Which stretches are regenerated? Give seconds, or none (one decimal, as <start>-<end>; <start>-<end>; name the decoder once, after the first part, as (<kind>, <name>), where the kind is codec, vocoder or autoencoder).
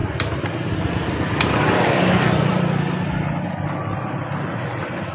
none